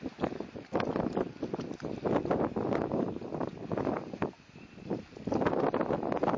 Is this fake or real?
real